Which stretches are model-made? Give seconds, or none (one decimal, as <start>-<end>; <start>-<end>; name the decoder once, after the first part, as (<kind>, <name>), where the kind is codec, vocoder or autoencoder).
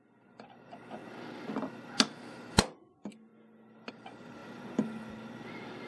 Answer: 0.0-1.0 (vocoder, BigVGAN v2); 2.8-3.3; 3.9-4.4; 5.1-5.9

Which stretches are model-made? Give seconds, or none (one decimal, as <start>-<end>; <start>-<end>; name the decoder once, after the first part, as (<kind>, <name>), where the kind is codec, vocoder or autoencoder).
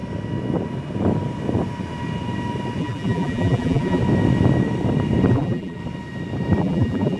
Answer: 2.8-4.0 (vocoder, BigVGAN v2); 5.3-5.8; 6.6-7.2